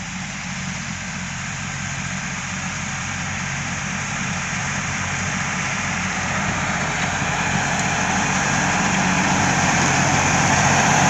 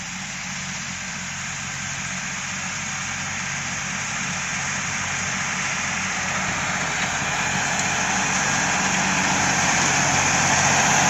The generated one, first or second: first